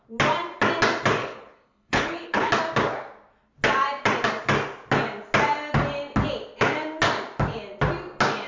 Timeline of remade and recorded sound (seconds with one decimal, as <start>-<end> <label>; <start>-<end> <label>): 0.0-1.2 recorded; 1.2-2.5 remade; 2.5-8.5 recorded